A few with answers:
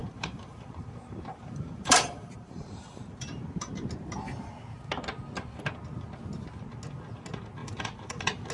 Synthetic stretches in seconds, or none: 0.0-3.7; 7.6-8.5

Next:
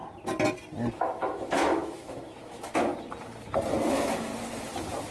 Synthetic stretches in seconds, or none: 0.9-2.9; 3.9-4.3

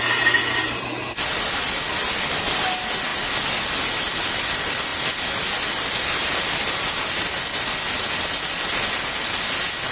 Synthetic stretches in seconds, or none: none

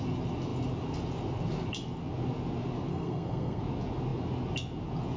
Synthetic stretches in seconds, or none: 2.9-3.6

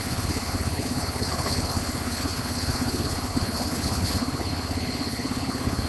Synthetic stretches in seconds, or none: 0.0-5.9